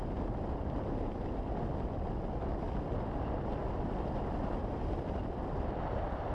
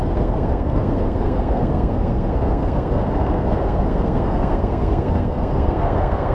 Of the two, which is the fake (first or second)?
second